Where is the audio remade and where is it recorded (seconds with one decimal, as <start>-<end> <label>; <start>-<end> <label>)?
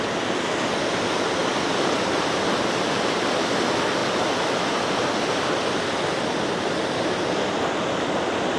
0.0-8.6 recorded